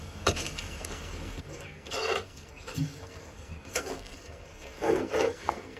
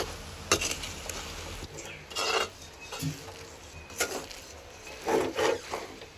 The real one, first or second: second